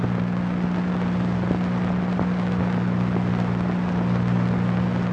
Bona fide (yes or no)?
yes